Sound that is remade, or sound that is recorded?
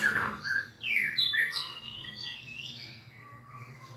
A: remade